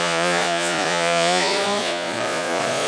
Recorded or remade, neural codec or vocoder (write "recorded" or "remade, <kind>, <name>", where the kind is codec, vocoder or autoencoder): remade, vocoder, Vocos